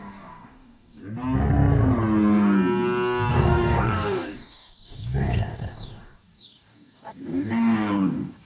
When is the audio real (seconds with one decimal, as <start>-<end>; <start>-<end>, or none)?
1.0-3.3